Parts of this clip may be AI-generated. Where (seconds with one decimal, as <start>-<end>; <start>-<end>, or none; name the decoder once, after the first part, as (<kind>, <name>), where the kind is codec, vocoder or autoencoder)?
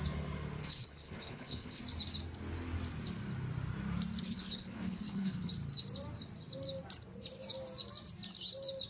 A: 0.6-1.8 (codec, HILCodec); 4.2-5.5